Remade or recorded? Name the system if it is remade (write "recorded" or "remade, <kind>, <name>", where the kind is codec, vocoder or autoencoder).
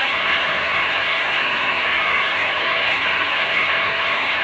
remade, codec, SNAC